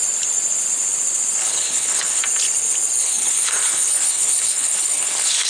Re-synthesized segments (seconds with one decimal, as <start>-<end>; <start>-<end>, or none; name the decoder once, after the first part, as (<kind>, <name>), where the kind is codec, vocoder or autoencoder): 1.4-2.2 (codec, HILCodec); 3.0-5.5